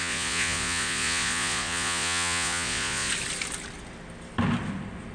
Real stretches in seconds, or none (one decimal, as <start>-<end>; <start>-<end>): 3.1-5.1